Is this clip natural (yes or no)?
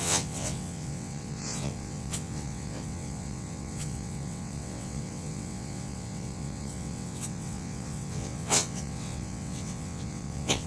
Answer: no